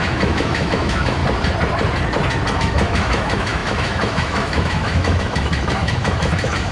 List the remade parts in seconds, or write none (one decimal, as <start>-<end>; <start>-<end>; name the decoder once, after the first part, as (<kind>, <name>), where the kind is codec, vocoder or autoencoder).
0.0-1.2 (autoencoder, DAC-VAE); 2.6-6.7